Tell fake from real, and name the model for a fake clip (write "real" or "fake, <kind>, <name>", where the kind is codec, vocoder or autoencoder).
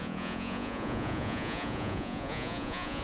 fake, vocoder, Vocos